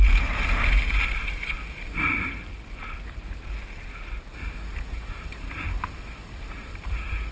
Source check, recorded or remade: recorded